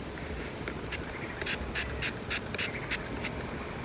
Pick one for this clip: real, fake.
real